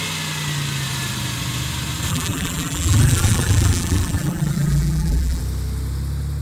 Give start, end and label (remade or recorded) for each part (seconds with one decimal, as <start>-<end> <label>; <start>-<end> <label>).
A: 0.0-2.1 recorded; 2.1-5.4 remade; 5.4-6.4 recorded